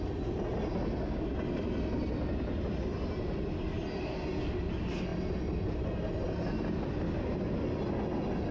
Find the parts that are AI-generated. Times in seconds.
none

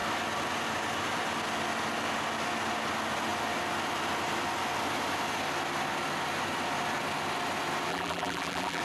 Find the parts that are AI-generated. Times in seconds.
7.9-8.8 (vocoder, BigVGAN v2)

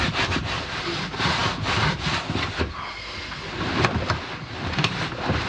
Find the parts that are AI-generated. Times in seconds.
none